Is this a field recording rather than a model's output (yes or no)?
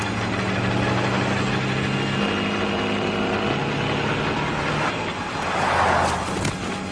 yes